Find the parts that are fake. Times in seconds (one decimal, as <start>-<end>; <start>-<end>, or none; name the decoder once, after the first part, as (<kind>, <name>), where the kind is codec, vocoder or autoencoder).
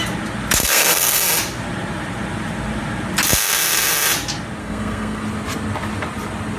0.6-1.2 (codec, SNAC); 4.6-5.2